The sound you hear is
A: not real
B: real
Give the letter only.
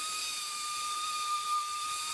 A